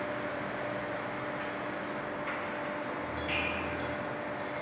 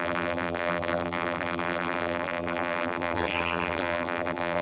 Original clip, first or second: first